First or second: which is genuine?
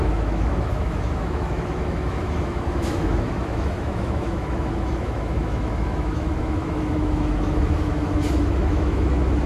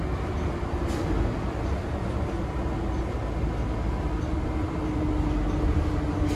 second